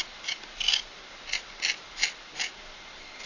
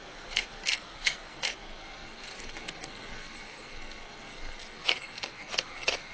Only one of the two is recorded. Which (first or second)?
first